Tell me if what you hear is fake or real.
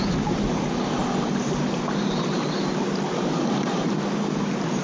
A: real